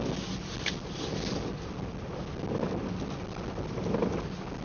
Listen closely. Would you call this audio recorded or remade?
recorded